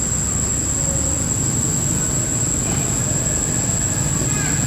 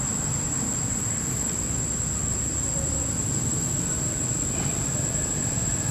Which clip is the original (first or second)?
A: first